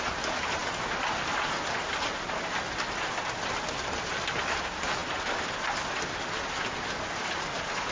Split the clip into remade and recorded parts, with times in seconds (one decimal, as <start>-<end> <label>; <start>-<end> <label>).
0.0-7.9 recorded